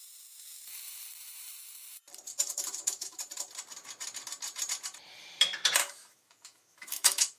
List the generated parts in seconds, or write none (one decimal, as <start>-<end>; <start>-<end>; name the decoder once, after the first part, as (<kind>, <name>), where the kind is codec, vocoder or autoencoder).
2.3-3.2 (autoencoder, DAC-VAE); 5.8-7.4